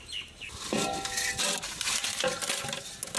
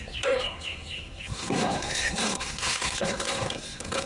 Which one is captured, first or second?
first